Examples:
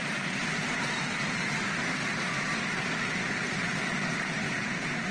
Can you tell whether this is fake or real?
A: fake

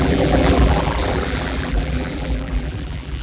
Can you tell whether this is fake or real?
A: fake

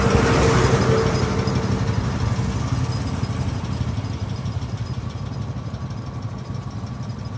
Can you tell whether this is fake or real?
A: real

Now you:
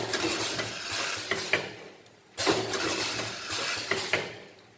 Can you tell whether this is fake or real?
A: real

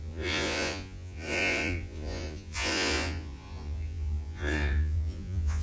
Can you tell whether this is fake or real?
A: fake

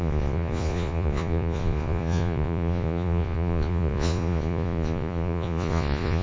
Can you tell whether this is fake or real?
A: fake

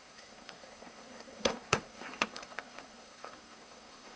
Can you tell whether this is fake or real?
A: fake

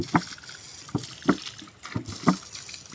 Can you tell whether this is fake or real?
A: real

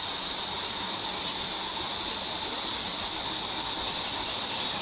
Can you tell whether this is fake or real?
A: real